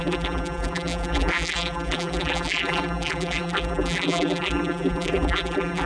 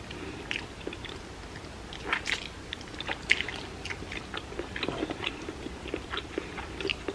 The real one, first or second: second